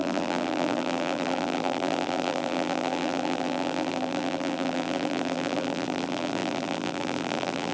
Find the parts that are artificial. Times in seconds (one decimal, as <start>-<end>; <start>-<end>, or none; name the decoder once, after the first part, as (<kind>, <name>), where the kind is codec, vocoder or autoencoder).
0.0-7.7 (vocoder, BigVGAN v2)